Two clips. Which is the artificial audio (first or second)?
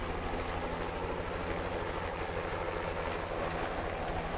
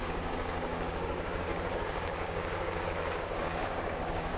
second